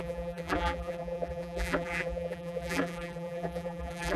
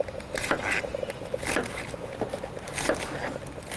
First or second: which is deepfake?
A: first